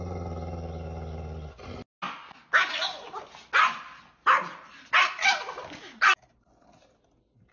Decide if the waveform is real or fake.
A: real